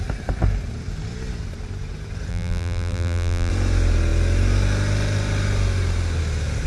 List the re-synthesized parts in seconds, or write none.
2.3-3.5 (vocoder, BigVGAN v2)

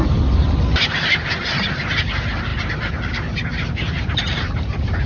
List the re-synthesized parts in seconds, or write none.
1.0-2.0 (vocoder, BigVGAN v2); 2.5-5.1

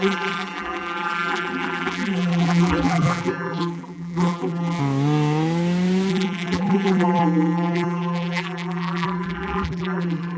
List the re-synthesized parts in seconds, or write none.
0.0-4.8 (vocoder, BigVGAN v2); 6.1-10.4

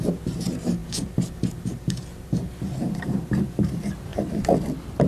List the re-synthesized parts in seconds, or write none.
0.0-4.1 (vocoder, BigVGAN v2)

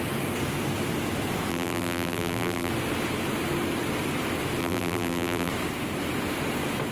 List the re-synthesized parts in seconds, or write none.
1.5-2.7 (vocoder, BigVGAN v2); 4.6-5.5